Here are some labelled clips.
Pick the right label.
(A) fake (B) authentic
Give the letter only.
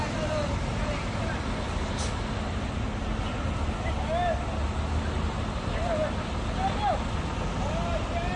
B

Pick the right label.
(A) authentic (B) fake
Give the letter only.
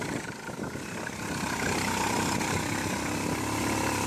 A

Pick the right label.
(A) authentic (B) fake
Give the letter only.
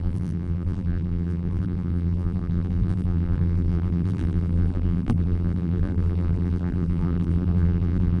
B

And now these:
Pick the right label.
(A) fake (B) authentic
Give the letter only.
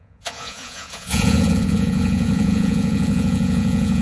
A